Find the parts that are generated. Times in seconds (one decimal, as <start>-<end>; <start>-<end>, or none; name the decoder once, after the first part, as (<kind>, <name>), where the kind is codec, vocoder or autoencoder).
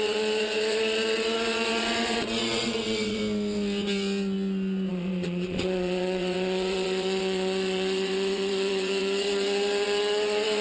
0.0-3.2 (vocoder, WaveNeXt); 4.9-10.6